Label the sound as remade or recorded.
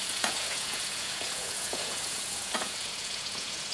remade